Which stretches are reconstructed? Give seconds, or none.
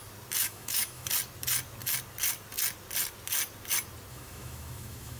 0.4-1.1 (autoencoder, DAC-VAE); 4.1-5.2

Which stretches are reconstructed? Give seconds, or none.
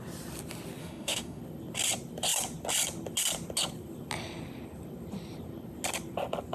0.8-1.4 (autoencoder, DAC-VAE)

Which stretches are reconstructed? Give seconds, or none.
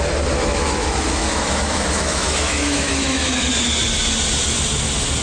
0.5-3.5 (autoencoder, DAC-VAE)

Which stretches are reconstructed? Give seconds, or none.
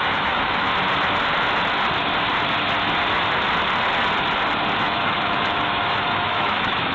0.0-0.7 (autoencoder, DAC-VAE); 4.8-6.9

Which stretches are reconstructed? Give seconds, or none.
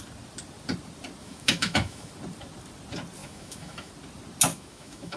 1.2-2.1 (autoencoder, DAC-VAE); 3.2-3.9; 4.5-5.2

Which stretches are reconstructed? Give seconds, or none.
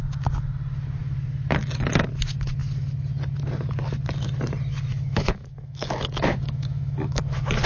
4.9-7.2 (autoencoder, DAC-VAE)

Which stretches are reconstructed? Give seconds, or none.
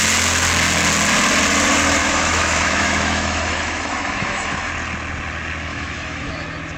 2.0-4.7 (autoencoder, DAC-VAE); 5.7-6.3